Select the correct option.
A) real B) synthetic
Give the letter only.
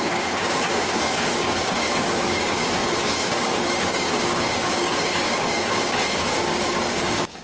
B